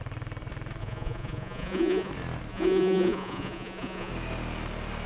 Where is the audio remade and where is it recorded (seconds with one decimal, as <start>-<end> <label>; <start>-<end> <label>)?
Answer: 0.0-0.8 recorded; 0.8-2.1 remade; 2.1-2.5 recorded; 2.5-4.1 remade; 4.1-5.1 recorded